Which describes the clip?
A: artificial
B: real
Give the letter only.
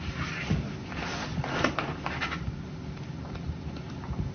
B